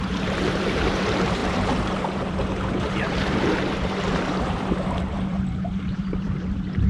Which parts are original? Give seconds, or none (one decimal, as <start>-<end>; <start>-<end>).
none